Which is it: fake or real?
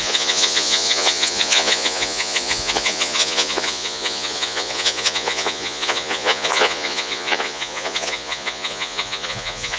fake